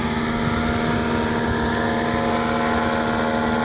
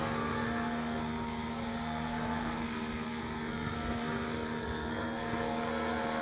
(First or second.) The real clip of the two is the first